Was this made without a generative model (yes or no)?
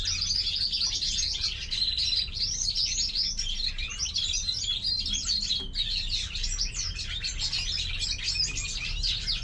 yes